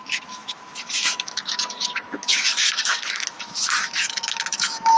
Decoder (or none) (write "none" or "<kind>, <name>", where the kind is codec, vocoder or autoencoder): autoencoder, DAC-VAE